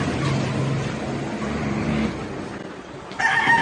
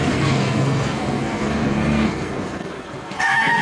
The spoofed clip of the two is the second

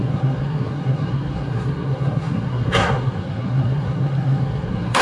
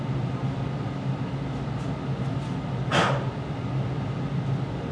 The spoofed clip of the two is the first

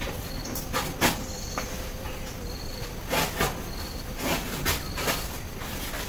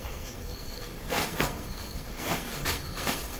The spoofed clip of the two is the second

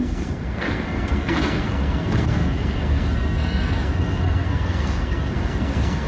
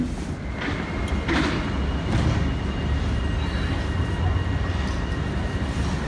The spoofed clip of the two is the first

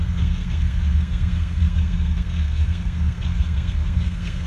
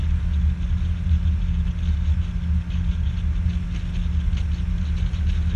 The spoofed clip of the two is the first